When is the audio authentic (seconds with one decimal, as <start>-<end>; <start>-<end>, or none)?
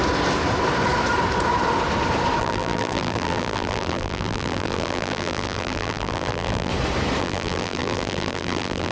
0.0-2.4; 6.7-7.2